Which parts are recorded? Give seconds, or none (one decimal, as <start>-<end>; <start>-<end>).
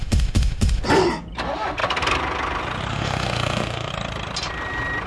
0.8-2.9; 3.9-5.1